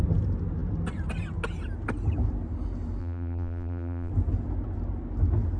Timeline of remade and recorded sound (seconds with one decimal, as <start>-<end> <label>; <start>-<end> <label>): 0.0-3.0 recorded; 3.0-4.1 remade; 4.1-5.6 recorded